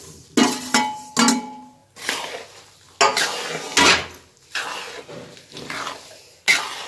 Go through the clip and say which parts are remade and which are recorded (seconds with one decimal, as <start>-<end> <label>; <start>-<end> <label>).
0.0-6.9 recorded